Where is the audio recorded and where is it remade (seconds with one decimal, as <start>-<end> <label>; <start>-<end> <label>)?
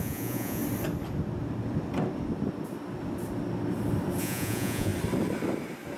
0.0-0.6 remade; 0.6-4.2 recorded; 4.2-4.9 remade; 4.9-6.0 recorded